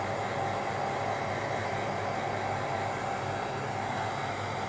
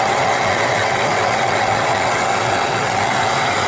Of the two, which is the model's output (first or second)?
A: second